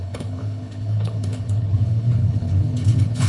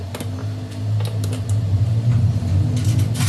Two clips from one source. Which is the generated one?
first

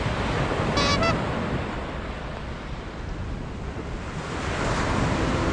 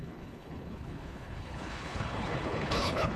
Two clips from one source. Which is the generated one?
second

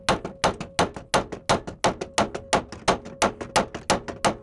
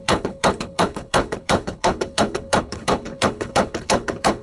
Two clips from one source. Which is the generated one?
second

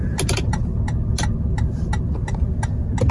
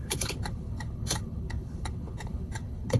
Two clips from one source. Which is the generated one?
second